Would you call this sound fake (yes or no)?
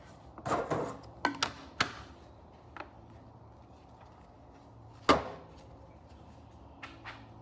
no